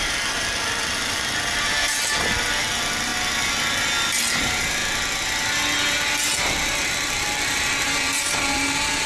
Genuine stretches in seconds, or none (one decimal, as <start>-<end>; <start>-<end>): 3.1-4.2; 4.8-5.9